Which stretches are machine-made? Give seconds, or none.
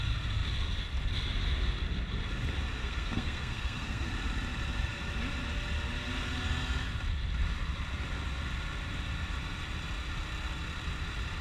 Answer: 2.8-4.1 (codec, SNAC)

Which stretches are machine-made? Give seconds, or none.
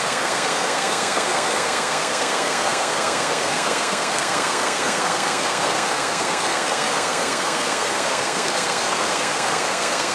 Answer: 0.0-10.1 (codec, SNAC)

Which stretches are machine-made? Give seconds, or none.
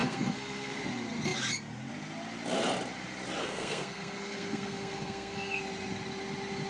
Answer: 0.0-0.8 (codec, SNAC); 3.4-5.6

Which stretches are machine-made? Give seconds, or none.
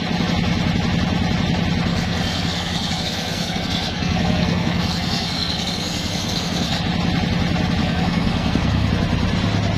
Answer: 1.9-6.8 (codec, SNAC); 7.8-8.9